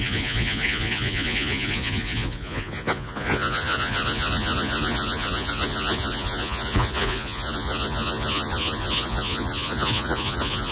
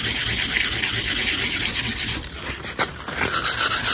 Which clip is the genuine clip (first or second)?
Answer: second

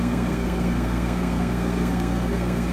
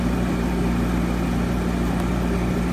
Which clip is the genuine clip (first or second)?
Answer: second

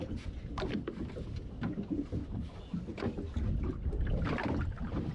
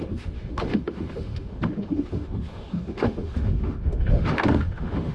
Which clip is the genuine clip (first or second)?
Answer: first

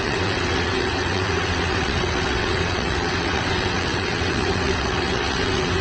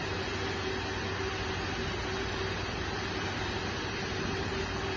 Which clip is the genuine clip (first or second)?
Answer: second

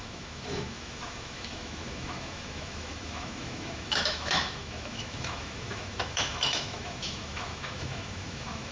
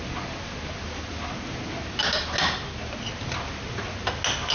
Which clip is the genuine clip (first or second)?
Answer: second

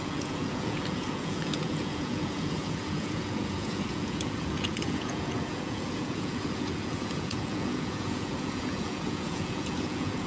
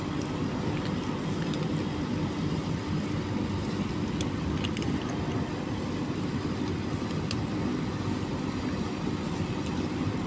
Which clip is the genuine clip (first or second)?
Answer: second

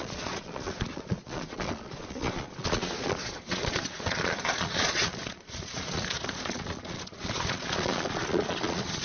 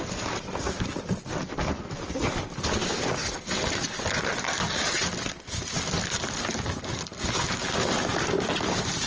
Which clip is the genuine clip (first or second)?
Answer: second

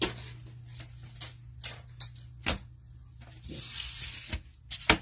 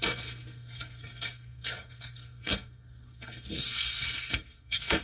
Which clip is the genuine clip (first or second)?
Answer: first